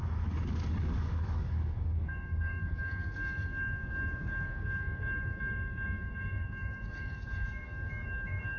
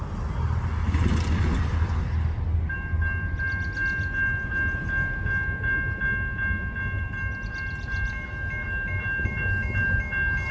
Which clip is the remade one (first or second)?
first